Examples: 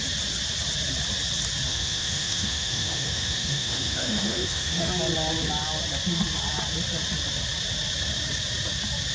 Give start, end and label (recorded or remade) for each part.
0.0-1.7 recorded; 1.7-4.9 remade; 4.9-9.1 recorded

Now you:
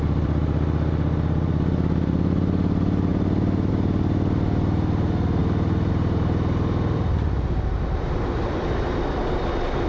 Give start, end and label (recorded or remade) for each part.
0.0-3.1 remade; 3.1-3.7 recorded; 3.7-5.4 remade; 5.4-5.9 recorded; 5.9-9.9 remade

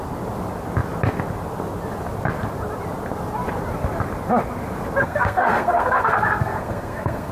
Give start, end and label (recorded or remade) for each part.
0.0-5.0 recorded; 5.0-7.3 remade

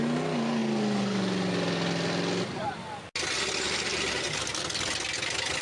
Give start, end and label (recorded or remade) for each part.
0.0-5.6 recorded

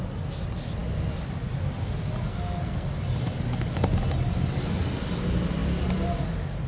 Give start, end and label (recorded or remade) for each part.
0.0-2.3 recorded; 2.3-2.9 remade; 2.9-6.7 recorded